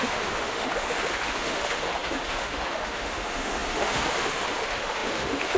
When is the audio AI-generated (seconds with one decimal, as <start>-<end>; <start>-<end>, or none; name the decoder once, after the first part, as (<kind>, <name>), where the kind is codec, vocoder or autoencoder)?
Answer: 0.0-5.6 (autoencoder, DAC-VAE)